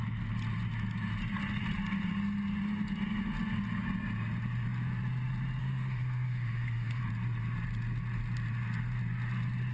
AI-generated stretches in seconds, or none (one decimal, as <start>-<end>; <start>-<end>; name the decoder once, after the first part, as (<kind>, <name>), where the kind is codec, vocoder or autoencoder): 5.6-7.0 (autoencoder, DAC-VAE)